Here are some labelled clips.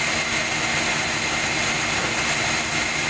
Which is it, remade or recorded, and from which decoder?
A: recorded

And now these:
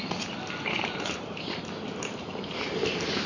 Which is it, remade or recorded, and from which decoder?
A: recorded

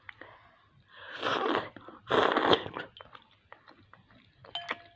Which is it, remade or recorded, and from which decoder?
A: recorded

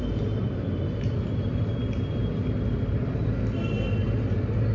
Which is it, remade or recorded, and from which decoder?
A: recorded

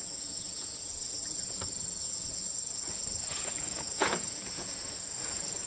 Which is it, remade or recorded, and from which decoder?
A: remade, vocoder, Vocos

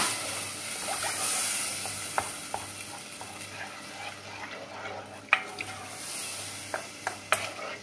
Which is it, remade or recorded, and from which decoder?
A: recorded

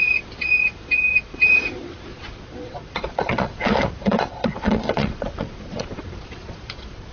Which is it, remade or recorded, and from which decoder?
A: remade, vocoder, Vocos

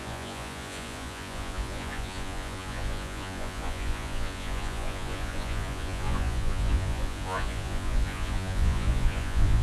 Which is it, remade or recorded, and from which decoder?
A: remade, vocoder, Vocos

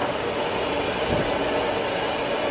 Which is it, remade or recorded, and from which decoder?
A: recorded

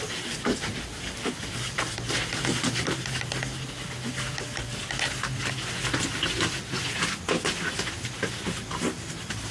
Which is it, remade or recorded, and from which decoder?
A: recorded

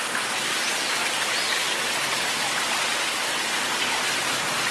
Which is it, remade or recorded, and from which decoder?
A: recorded